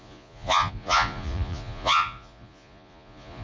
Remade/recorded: remade